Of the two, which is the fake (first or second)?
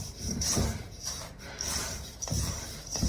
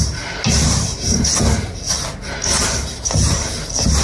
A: first